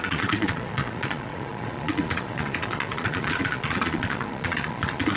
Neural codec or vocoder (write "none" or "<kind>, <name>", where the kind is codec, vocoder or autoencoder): vocoder, Vocos